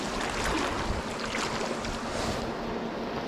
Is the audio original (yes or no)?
yes